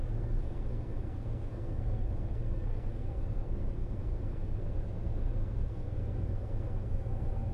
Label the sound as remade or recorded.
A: remade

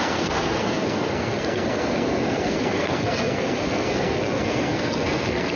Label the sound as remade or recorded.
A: remade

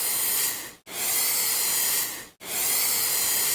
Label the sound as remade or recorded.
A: recorded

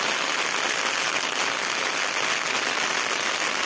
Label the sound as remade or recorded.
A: recorded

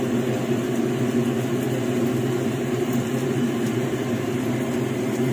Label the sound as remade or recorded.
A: recorded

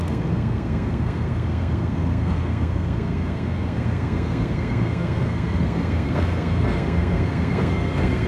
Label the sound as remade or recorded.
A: remade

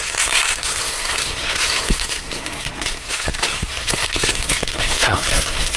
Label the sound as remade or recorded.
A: remade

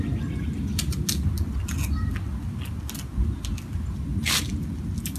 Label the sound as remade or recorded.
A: recorded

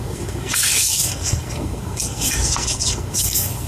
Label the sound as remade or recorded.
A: remade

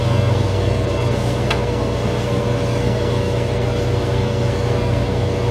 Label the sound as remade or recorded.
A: remade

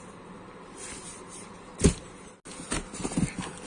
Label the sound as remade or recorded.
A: recorded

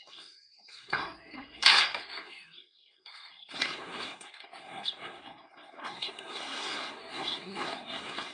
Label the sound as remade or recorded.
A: remade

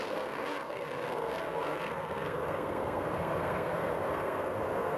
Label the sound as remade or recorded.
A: remade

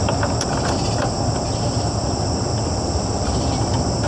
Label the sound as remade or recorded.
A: recorded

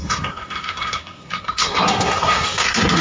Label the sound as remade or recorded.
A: remade